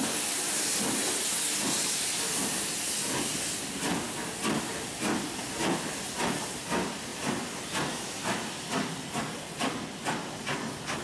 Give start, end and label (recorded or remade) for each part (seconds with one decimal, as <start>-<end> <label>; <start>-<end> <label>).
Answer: 0.0-11.0 recorded

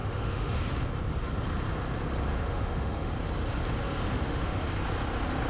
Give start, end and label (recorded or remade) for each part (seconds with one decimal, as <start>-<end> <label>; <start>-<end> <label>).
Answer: 0.0-0.6 remade; 0.6-2.3 recorded; 2.3-3.1 remade; 3.1-3.8 recorded; 3.8-4.6 remade; 4.6-5.5 recorded

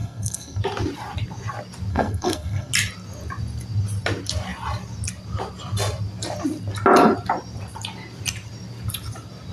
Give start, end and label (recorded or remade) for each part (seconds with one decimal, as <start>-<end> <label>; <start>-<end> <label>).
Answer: 0.0-0.6 remade; 0.6-1.9 recorded; 1.9-2.7 remade; 2.7-9.5 recorded

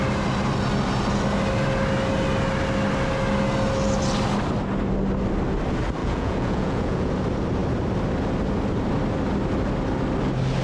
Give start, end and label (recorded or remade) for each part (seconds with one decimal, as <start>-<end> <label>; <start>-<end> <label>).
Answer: 0.0-6.0 recorded; 6.0-7.1 remade; 7.1-10.6 recorded

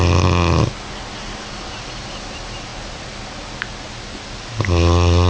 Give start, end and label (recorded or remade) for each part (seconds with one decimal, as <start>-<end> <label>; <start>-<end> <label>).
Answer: 0.0-5.3 recorded

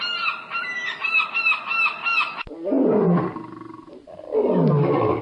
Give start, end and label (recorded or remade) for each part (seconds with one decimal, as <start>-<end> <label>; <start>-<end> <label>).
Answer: 0.0-5.2 recorded

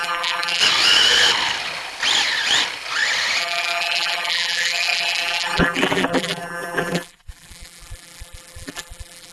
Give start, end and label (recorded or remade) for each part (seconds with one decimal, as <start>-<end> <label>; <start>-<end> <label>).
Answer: 0.0-0.6 remade; 0.6-3.4 recorded; 3.4-9.3 remade